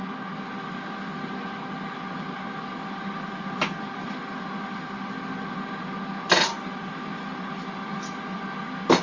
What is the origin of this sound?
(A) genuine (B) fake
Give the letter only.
A